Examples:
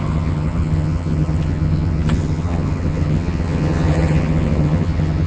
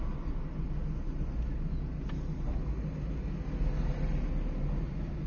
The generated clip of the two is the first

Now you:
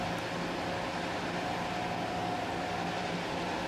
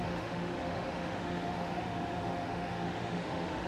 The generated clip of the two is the second